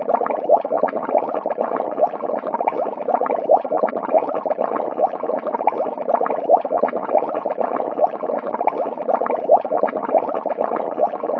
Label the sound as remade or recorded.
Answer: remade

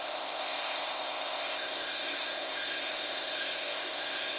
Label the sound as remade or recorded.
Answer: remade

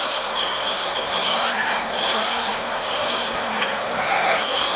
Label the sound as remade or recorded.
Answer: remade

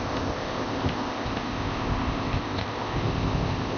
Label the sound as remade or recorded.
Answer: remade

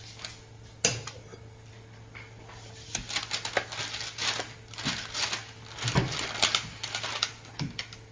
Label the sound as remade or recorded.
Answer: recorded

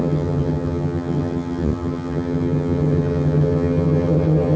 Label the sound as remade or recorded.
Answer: remade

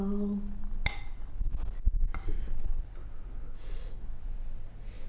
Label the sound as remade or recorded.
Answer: recorded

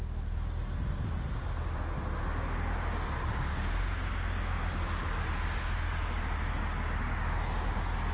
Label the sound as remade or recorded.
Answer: recorded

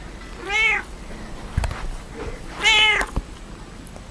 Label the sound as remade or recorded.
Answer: recorded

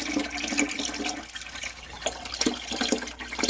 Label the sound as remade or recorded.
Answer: recorded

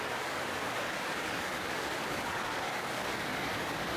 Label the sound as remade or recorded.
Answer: remade